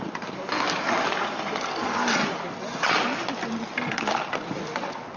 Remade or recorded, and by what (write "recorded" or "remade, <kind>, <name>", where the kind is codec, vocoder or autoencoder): recorded